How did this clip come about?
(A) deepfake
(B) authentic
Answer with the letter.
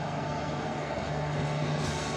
A